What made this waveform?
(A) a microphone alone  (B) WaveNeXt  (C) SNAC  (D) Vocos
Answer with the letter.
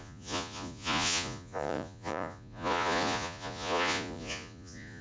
D